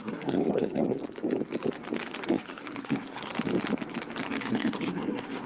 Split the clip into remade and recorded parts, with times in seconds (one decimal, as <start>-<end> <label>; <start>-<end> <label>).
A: 0.0-1.0 remade; 1.0-2.3 recorded; 2.3-3.3 remade; 3.3-4.3 recorded; 4.3-5.5 remade